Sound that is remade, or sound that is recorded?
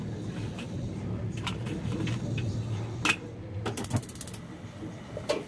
recorded